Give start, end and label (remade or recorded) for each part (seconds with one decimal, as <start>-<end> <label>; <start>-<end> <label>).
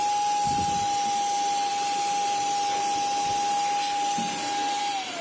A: 0.0-5.2 recorded